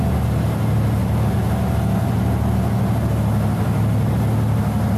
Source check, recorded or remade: recorded